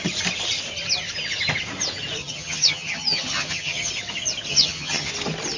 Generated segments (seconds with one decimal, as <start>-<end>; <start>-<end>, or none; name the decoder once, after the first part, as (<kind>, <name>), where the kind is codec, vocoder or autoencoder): 2.2-3.9 (vocoder, HiFi-GAN); 4.5-5.1